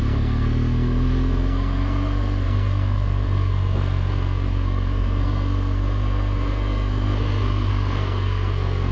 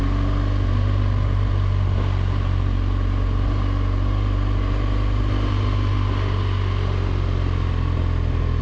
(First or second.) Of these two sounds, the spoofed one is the first